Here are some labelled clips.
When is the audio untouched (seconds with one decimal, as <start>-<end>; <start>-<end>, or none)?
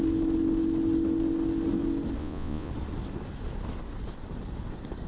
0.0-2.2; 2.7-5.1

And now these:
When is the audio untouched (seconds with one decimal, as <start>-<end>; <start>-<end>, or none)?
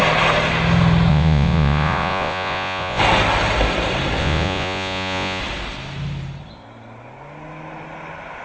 0.0-1.1; 3.0-4.2; 5.4-8.4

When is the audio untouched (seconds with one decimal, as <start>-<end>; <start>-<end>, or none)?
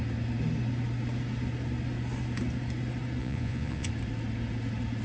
0.0-3.2; 3.9-5.0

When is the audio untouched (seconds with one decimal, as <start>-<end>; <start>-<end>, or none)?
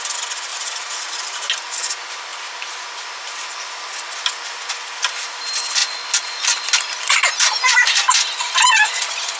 0.0-0.5; 1.1-9.4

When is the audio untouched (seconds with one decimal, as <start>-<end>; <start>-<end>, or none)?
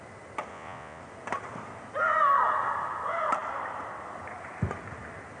0.0-0.5; 1.0-5.4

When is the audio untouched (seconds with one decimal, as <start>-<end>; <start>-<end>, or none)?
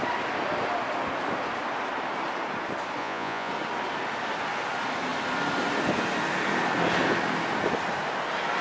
0.0-3.0; 3.5-8.6